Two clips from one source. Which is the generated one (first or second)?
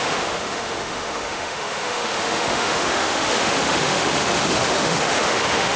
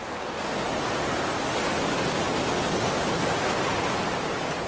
first